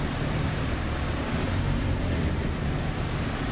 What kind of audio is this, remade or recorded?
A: remade